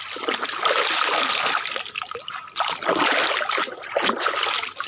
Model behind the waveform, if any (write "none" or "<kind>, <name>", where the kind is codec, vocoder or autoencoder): none